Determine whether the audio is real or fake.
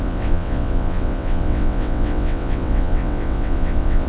fake